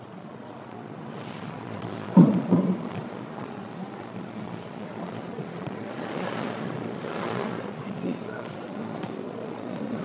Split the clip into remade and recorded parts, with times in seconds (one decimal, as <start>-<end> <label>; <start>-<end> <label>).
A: 0.0-10.0 remade